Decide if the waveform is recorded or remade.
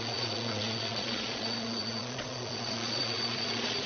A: remade